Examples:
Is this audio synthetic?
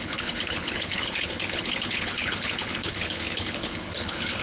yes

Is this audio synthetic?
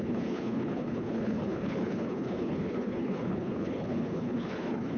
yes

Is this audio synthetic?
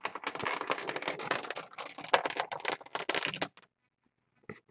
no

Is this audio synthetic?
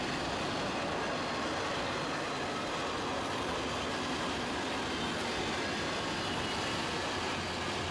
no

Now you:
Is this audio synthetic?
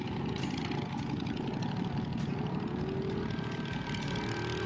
no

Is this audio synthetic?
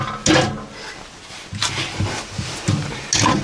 no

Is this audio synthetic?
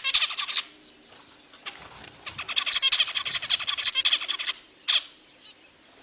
no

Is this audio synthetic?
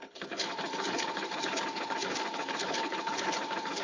yes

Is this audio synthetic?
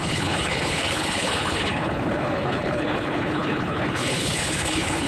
yes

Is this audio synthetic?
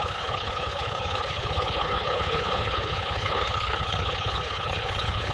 yes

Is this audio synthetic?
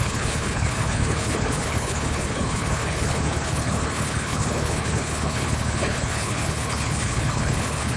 yes